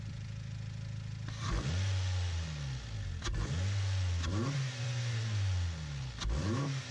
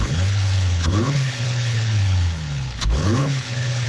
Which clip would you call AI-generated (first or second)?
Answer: second